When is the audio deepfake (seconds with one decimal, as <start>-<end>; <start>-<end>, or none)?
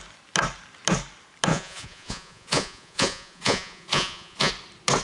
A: 1.5-4.5